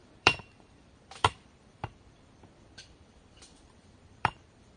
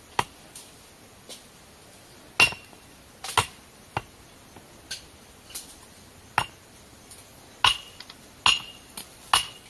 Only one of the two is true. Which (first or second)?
second